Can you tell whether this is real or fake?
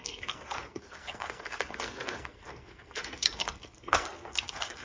fake